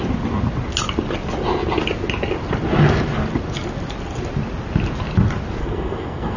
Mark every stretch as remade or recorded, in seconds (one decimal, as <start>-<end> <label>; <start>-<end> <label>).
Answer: 0.0-5.6 recorded; 5.6-6.4 remade